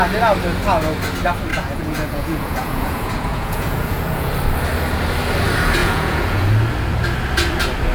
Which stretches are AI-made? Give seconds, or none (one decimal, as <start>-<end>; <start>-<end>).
1.5-4.3; 5.8-6.5